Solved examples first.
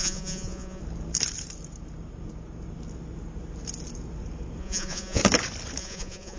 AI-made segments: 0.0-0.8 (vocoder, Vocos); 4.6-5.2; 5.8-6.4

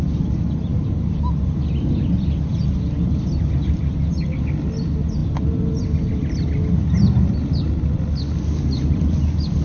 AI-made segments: none

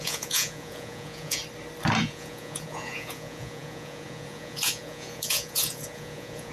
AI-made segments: 0.0-1.4 (vocoder, Vocos); 2.0-6.5

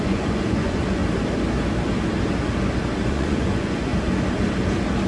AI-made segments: 0.0-1.0 (vocoder, Vocos); 3.1-3.9

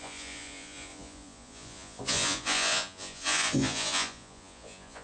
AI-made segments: 0.0-5.0 (vocoder, Vocos)

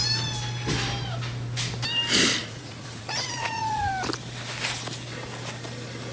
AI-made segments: 2.4-3.9 (vocoder, Vocos)